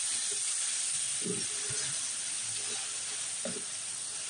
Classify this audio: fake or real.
real